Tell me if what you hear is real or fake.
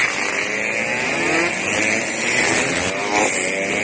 real